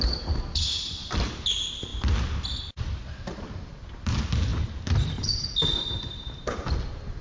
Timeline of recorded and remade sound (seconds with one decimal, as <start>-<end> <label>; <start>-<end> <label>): 0.0-7.2 recorded